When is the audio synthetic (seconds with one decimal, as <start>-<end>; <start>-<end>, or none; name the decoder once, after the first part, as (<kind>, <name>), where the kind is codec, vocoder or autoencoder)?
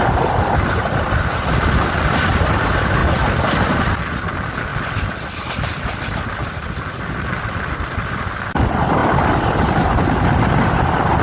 4.7-6.3 (vocoder, BigVGAN v2); 9.0-10.0